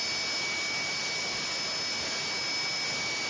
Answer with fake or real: real